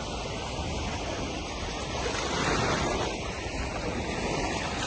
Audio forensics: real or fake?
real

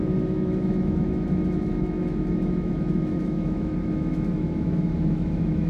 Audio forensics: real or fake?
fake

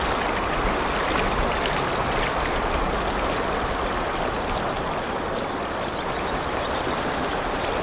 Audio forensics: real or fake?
real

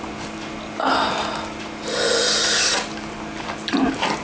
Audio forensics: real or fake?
real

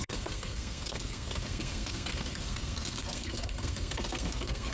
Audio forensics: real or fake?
fake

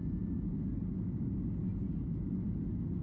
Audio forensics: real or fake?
real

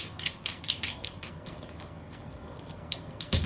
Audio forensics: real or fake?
fake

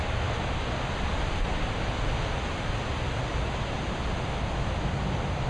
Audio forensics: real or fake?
real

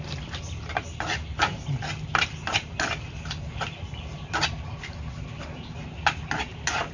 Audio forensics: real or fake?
real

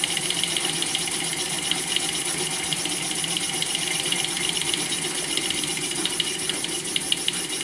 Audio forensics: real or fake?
real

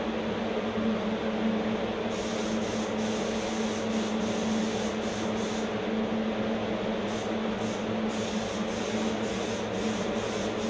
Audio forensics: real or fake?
real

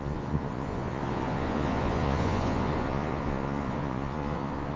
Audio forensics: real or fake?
fake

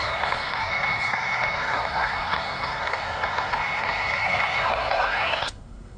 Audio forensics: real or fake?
fake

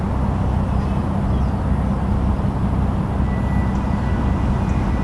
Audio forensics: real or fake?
real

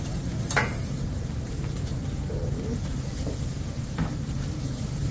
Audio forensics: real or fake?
fake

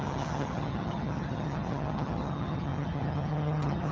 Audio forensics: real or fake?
fake